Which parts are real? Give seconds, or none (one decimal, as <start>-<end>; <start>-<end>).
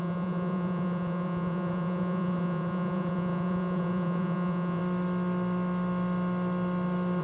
4.8-7.2